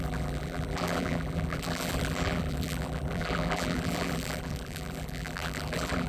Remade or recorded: remade